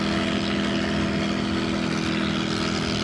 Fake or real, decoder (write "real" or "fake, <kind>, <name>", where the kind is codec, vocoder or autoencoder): real